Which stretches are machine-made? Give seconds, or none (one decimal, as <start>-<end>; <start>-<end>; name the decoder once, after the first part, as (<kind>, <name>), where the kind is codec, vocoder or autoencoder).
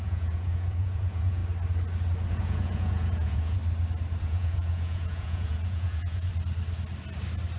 0.0-1.4 (vocoder, Vocos); 2.3-3.6; 4.2-6.3